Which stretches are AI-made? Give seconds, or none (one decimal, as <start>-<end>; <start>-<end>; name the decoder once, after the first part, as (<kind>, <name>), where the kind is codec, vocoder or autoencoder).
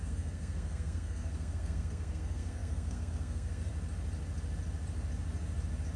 0.0-3.7 (codec, SNAC)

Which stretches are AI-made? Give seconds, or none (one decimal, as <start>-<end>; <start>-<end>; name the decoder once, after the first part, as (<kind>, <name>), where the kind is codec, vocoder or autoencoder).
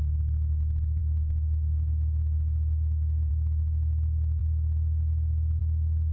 1.0-3.3 (autoencoder, DAC-VAE)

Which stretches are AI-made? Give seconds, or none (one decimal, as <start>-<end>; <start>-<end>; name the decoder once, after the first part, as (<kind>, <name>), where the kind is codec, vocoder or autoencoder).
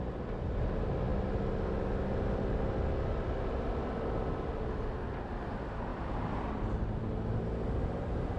none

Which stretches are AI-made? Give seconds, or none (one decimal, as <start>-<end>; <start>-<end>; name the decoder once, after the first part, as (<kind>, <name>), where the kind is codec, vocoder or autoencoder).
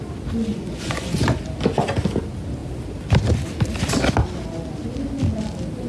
0.5-1.4 (vocoder, Vocos)